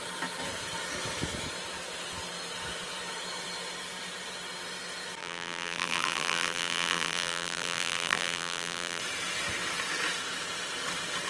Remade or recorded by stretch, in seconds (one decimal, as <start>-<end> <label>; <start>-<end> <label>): 0.0-5.2 recorded; 5.2-9.0 remade; 9.0-11.3 recorded